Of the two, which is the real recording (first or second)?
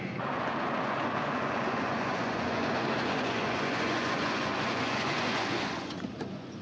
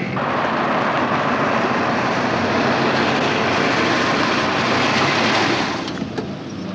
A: second